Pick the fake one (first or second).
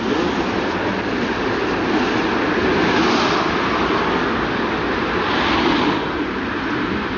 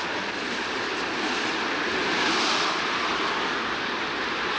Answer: second